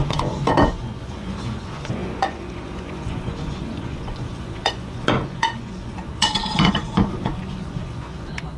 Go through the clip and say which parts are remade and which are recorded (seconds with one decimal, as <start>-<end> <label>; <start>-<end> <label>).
0.0-8.6 remade